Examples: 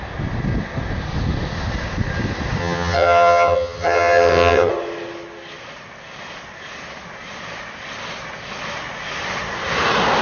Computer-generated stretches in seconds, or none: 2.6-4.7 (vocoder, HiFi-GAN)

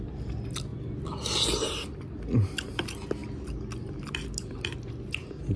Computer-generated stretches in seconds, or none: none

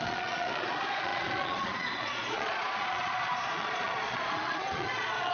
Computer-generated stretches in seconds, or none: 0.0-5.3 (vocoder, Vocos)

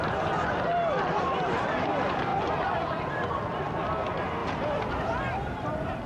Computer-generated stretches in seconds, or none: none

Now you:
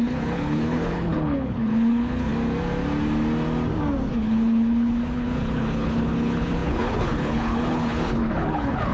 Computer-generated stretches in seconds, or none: 0.0-2.3 (codec, HILCodec); 4.1-8.9

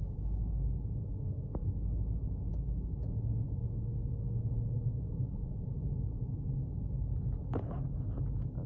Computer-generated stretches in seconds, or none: none